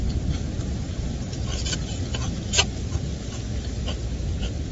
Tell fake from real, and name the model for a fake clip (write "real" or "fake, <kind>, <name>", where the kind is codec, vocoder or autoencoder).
real